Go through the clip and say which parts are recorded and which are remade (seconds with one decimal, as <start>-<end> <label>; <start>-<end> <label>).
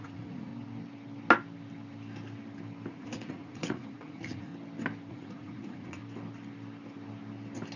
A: 0.0-0.5 remade; 0.5-2.9 recorded; 2.9-4.5 remade; 4.5-5.1 recorded; 5.1-6.0 remade; 6.0-7.8 recorded